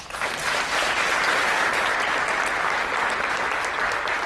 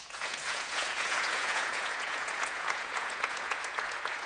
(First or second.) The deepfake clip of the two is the second